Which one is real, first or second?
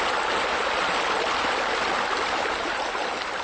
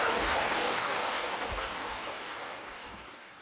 first